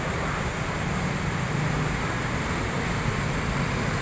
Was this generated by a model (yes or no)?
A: no